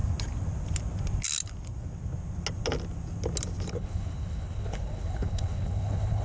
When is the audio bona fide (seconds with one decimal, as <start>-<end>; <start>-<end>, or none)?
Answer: 0.0-3.7